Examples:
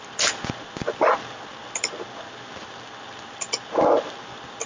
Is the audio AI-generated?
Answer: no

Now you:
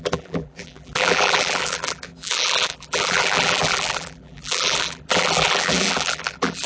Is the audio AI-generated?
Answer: yes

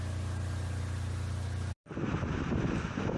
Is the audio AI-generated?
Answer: no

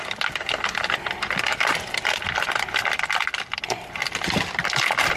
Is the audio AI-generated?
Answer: no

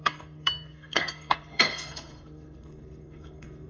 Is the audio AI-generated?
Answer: yes